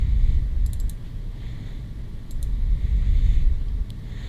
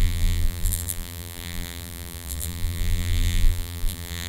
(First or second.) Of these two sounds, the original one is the first